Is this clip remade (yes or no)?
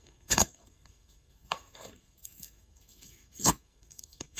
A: yes